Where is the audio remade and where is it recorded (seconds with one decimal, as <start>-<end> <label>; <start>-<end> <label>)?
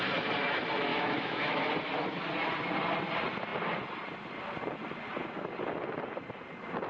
0.0-0.9 recorded; 0.9-1.7 remade; 1.7-6.9 recorded